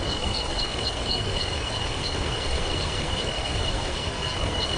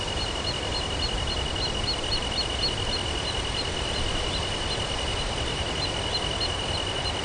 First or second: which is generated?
first